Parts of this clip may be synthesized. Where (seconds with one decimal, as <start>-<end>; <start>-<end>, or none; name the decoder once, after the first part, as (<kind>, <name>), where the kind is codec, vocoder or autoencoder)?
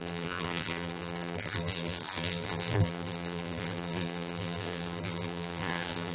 0.0-6.1 (vocoder, BigVGAN v2)